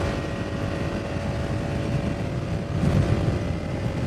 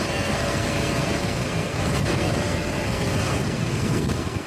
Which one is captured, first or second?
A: first